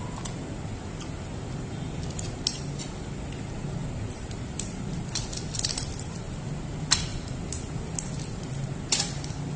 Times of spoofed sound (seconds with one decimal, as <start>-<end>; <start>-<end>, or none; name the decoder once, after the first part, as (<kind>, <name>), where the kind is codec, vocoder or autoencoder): 3.8-6.4 (vocoder, BigVGAN v2)